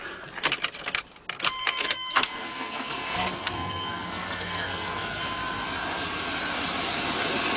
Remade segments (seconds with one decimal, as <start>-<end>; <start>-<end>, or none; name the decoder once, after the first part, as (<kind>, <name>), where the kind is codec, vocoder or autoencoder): 1.6-5.2 (codec, SNAC)